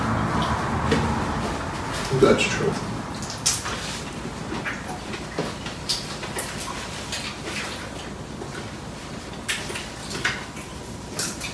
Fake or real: real